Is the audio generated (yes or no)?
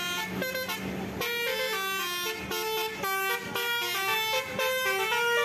no